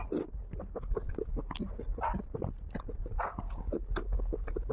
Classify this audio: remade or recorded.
recorded